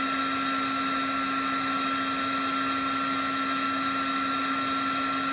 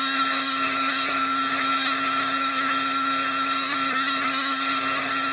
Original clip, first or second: first